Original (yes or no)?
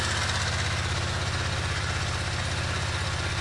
yes